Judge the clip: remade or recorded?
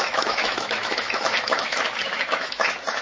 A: remade